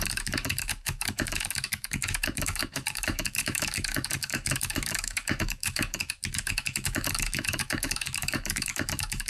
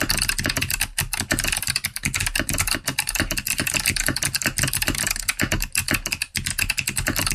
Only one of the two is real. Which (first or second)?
second